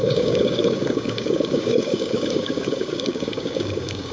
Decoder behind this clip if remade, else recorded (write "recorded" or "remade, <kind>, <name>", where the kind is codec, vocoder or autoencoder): remade, codec, DAC